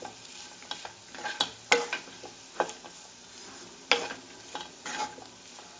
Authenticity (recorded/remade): recorded